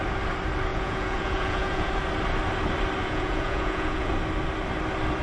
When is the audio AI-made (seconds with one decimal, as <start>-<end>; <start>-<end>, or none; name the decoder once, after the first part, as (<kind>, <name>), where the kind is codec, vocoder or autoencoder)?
0.7-1.9 (vocoder, Vocos); 3.0-4.1